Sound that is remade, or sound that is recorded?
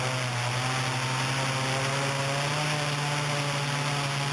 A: recorded